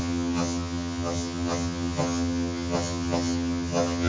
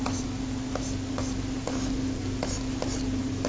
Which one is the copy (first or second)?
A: first